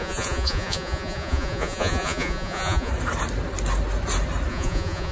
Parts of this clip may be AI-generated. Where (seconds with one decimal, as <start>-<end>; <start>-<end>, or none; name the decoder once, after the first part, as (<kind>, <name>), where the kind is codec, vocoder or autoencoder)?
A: 0.0-2.9 (vocoder, Vocos); 4.5-5.1

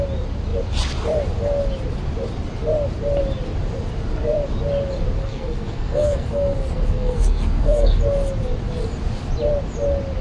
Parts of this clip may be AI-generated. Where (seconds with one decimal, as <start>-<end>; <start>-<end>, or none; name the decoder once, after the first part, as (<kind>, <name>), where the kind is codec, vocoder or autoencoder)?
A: 5.2-8.0 (codec, SNAC)

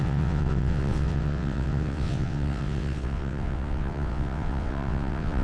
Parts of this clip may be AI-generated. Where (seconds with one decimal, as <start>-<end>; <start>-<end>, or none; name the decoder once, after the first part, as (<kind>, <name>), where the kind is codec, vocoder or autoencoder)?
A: 0.0-5.4 (vocoder, WaveNeXt)

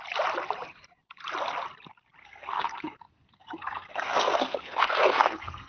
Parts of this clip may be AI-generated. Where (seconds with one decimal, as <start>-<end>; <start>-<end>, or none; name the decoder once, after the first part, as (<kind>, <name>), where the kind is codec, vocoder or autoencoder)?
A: 2.2-5.7 (codec, SNAC)

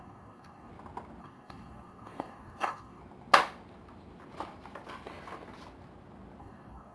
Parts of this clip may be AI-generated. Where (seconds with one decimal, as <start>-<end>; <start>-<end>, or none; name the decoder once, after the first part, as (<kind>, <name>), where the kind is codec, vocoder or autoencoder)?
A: 0.0-0.7 (codec, DAC); 1.2-3.0; 6.4-6.9

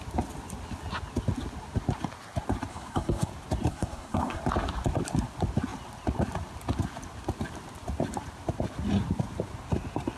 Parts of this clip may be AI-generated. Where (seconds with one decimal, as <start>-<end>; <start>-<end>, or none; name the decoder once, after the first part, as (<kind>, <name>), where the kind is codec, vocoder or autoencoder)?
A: 2.7-3.3 (codec, SNAC); 3.7-4.4

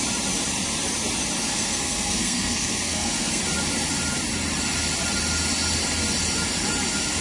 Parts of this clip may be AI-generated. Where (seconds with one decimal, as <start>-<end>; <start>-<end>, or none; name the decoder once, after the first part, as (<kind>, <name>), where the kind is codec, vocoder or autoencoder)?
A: 1.5-3.4 (codec, SNAC)

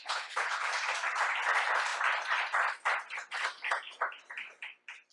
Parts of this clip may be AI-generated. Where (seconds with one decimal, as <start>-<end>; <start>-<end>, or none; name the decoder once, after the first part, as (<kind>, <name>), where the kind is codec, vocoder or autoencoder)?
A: 0.0-0.7 (codec, HILCodec)